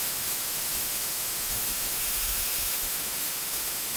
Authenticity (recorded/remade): remade